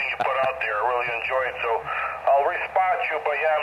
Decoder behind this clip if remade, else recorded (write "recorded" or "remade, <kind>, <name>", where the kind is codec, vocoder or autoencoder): recorded